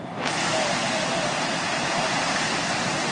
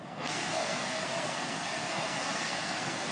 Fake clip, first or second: second